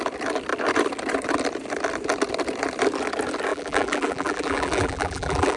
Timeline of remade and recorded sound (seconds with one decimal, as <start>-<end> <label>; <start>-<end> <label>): 0.0-3.5 recorded; 3.5-5.6 remade